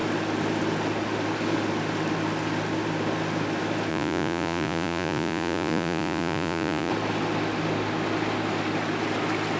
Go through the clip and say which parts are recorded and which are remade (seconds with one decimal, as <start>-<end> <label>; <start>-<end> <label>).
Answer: 0.0-3.9 recorded; 3.9-6.9 remade; 6.9-9.6 recorded